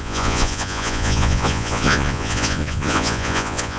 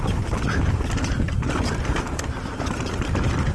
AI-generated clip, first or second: first